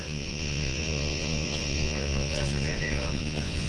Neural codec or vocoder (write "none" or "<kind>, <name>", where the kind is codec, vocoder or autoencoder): vocoder, Vocos